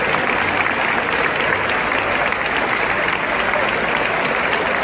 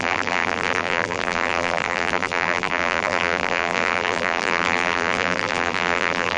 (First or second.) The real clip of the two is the first